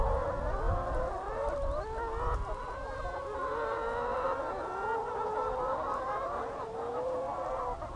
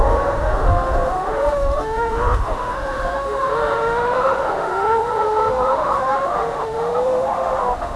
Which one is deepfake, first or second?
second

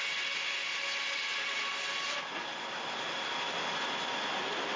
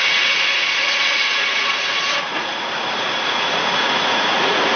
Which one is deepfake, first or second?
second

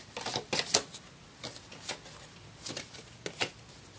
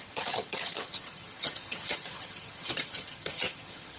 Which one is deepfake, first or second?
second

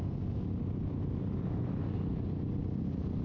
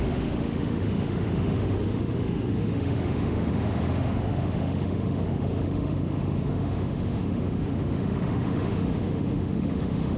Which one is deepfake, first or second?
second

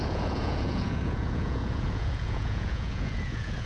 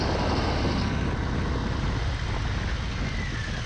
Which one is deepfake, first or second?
first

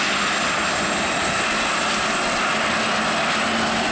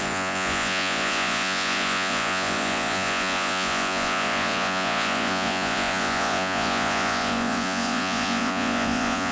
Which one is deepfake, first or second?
second